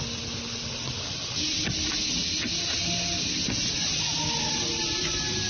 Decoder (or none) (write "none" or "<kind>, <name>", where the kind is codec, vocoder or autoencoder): none